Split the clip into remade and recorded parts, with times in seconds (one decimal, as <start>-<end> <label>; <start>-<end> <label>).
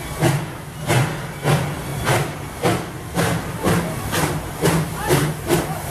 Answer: 0.0-5.9 recorded